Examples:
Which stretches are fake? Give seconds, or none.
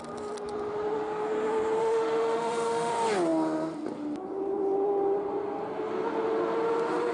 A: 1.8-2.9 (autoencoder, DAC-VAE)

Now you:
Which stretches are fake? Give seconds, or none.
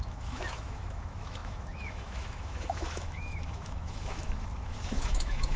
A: 0.0-5.6 (autoencoder, DAC-VAE)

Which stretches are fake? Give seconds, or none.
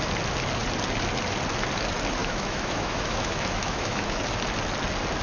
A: 2.2-4.2 (autoencoder, DAC-VAE)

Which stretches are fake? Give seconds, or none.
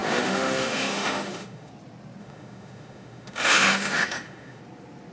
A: 0.0-1.7 (autoencoder, DAC-VAE); 2.2-4.6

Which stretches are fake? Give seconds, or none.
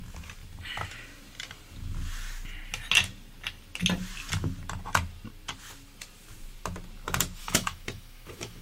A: 7.4-8.6 (autoencoder, DAC-VAE)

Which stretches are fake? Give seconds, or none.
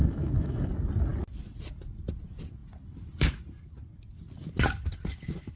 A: 0.0-0.7 (autoencoder, DAC-VAE)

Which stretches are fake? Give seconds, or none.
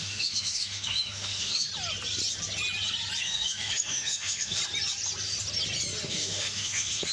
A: 0.0-1.7 (autoencoder, DAC-VAE); 3.2-4.6; 6.1-7.1